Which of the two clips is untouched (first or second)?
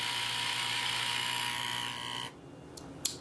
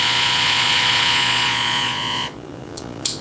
first